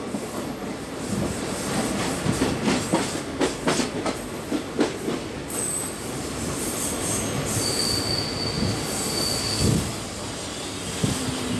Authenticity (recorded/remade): recorded